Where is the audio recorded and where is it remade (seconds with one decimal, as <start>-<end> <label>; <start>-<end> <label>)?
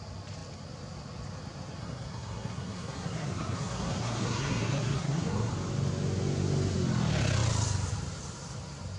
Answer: 0.0-1.8 recorded; 1.8-5.5 remade; 5.5-9.0 recorded